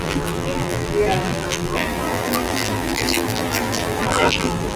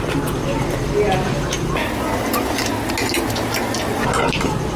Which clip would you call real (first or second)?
second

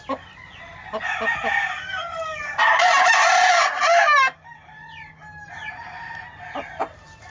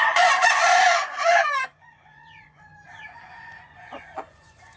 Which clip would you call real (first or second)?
first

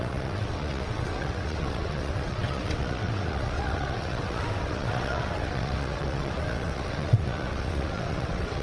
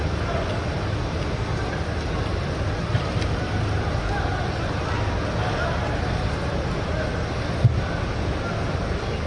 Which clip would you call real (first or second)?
second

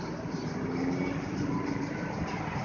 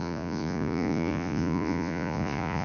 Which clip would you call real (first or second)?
first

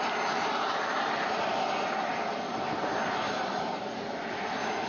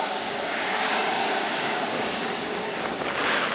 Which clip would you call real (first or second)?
first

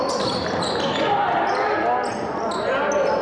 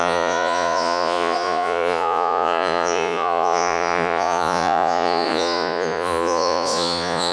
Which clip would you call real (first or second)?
first